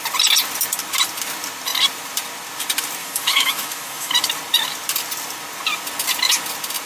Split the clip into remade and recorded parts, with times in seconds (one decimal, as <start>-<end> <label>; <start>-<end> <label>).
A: 0.0-3.0 recorded; 3.0-4.1 remade; 4.1-6.9 recorded